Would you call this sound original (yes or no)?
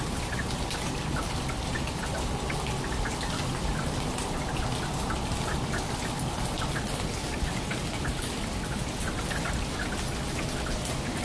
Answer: yes